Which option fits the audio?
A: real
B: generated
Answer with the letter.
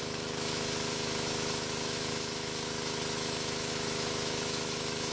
B